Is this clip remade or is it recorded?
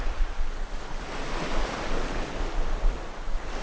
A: recorded